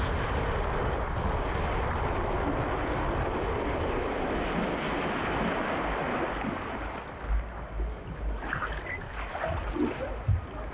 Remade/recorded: recorded